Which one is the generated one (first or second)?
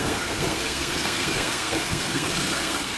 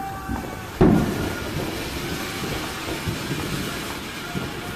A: first